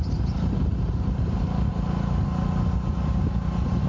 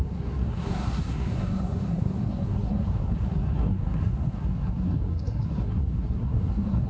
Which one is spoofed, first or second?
second